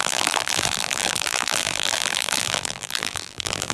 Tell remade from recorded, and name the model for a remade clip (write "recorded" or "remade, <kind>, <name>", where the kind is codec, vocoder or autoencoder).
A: remade, vocoder, BigVGAN v2